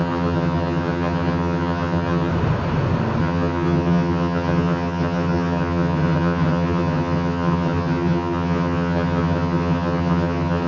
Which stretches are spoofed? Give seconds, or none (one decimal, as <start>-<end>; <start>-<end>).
0.0-2.3; 3.2-10.7